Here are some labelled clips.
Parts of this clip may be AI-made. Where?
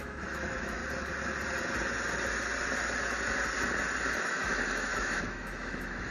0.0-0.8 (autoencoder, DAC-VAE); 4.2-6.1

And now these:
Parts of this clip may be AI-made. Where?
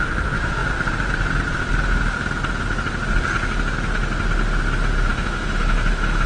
5.1-6.3 (autoencoder, DAC-VAE)